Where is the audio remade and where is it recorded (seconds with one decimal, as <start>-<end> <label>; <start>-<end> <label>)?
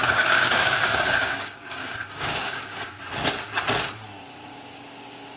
0.0-3.0 remade; 3.0-4.5 recorded; 4.5-5.4 remade